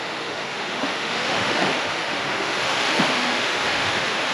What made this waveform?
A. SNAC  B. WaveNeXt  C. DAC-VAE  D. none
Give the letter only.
C